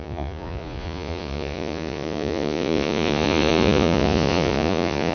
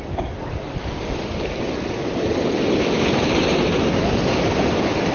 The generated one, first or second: first